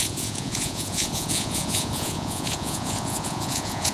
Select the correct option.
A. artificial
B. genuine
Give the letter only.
A